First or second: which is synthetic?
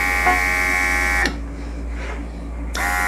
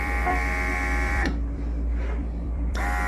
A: second